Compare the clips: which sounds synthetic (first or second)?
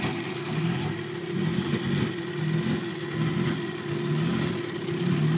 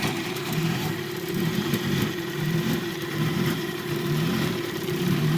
second